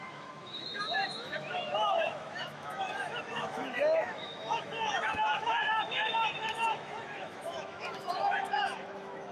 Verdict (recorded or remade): remade